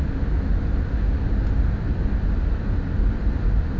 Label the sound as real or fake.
real